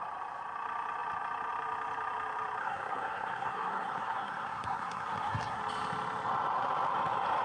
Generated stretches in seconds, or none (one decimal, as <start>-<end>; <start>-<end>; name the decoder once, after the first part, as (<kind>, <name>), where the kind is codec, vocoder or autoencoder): 2.6-5.6 (codec, SNAC)